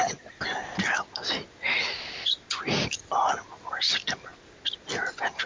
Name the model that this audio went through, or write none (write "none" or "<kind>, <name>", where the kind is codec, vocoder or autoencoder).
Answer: none